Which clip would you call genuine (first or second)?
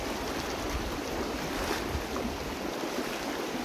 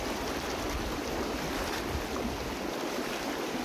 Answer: second